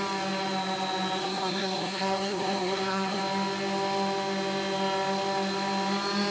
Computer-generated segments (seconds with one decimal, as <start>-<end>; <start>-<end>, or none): 1.2-3.2

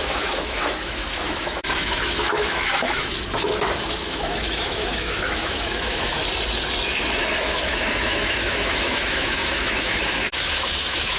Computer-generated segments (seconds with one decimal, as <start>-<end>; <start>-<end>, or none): 0.0-3.1; 3.8-6.2; 7.4-11.2